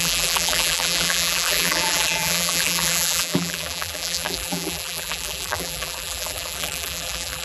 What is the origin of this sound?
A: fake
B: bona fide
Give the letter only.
A